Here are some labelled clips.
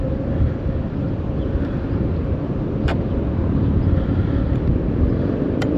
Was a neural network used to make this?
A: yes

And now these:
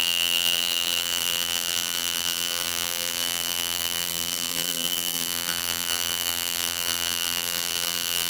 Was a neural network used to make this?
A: yes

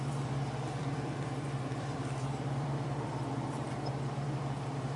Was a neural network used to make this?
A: yes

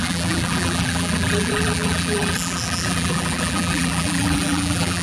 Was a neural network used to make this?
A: yes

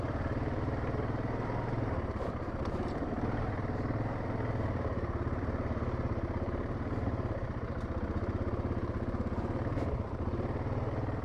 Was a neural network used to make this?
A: yes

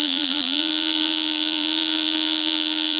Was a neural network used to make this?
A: yes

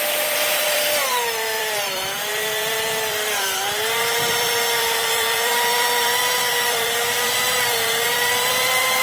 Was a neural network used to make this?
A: yes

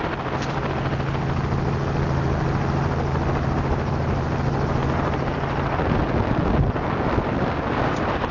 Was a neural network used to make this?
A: no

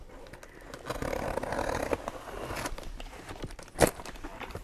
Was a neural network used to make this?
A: no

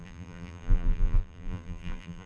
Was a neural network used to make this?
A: yes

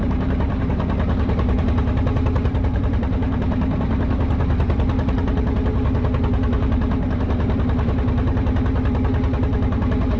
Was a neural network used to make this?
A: yes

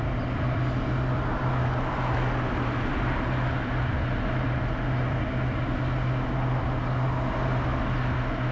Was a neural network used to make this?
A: no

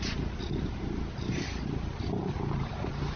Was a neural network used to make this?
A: no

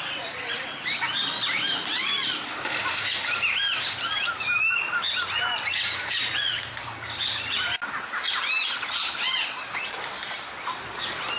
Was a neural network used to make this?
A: yes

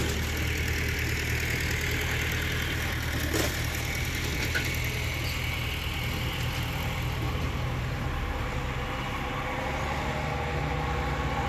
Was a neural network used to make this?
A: no